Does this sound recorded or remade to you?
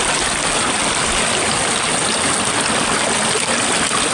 recorded